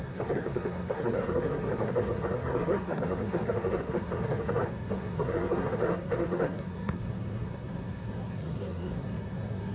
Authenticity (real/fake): fake